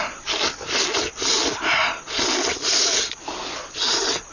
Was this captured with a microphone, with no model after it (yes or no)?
yes